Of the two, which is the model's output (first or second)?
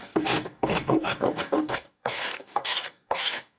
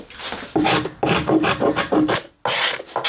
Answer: first